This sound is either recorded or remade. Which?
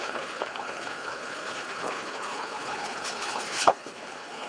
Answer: remade